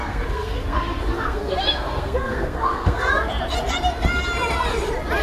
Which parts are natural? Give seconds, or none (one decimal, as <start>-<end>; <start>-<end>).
3.1-5.2